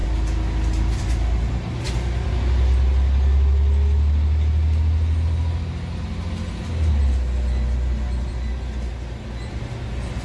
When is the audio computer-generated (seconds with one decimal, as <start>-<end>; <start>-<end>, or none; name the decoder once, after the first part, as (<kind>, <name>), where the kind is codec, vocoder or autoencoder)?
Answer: 0.0-2.3 (vocoder, BigVGAN v2)